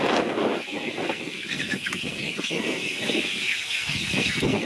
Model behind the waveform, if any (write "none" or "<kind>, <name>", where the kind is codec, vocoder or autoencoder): codec, SNAC